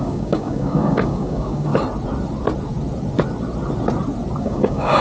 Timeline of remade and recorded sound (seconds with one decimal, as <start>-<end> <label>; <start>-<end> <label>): 0.0-1.7 remade; 1.7-4.4 recorded; 4.4-5.0 remade